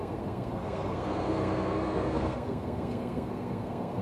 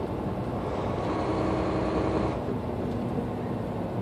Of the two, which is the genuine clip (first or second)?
second